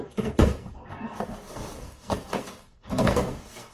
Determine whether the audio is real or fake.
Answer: fake